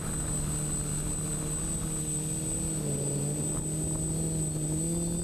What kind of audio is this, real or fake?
real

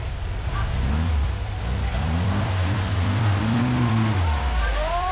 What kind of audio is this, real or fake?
fake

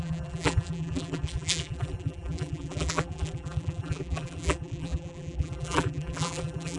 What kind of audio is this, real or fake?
fake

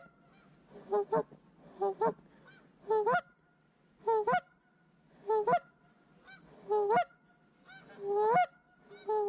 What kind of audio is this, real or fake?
real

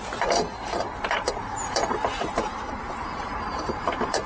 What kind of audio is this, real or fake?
fake